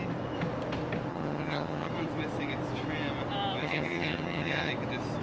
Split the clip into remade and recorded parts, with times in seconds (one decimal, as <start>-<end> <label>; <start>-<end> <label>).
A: 0.0-1.1 recorded; 1.1-1.9 remade; 1.9-3.6 recorded; 3.6-4.7 remade; 4.7-5.2 recorded